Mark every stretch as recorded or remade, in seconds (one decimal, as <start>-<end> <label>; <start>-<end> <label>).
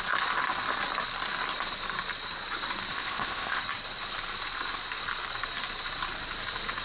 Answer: 0.0-2.9 recorded; 2.9-3.6 remade; 3.6-6.8 recorded